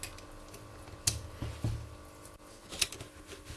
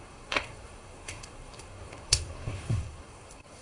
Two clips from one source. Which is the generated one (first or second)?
second